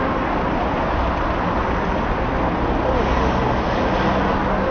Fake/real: real